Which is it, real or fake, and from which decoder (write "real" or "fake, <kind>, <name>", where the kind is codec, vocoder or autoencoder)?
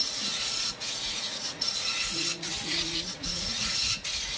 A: fake, vocoder, Vocos